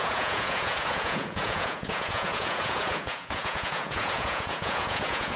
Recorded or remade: remade